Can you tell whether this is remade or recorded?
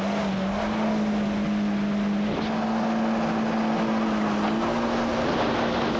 recorded